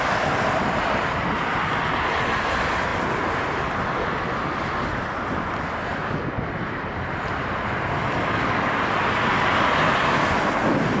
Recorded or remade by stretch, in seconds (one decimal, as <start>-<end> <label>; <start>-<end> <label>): 0.0-11.0 recorded